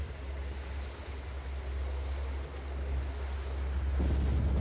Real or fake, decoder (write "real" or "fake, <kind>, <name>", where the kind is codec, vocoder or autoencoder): real